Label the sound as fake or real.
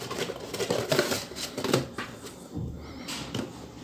real